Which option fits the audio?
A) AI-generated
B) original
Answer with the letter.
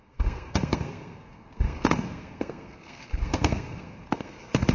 A